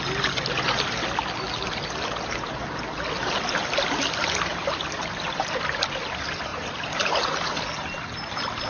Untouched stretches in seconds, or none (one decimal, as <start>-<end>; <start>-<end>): 0.0-4.5; 5.8-8.7